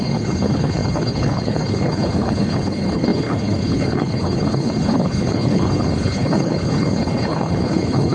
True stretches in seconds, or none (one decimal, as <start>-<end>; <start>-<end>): none